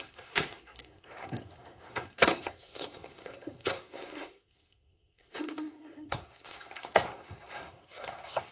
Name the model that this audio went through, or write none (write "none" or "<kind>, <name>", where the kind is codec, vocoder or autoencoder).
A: codec, SNAC